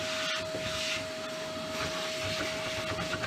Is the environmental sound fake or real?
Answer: real